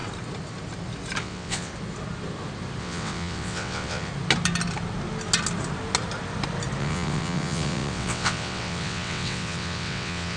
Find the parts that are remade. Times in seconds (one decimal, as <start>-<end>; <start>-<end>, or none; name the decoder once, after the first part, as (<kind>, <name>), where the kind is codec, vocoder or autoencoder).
1.2-1.7 (vocoder, WaveNeXt); 2.8-4.1; 6.8-10.4